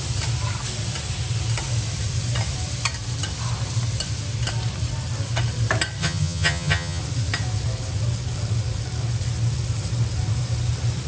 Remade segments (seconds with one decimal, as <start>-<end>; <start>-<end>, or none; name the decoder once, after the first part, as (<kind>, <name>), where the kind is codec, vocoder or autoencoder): 6.0-7.0 (vocoder, HiFi-GAN)